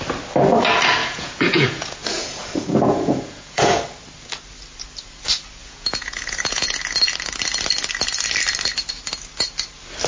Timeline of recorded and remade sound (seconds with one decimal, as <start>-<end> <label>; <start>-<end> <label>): 0.0-1.0 recorded; 1.0-3.8 remade; 3.8-5.6 recorded; 5.6-6.8 remade; 6.8-10.1 recorded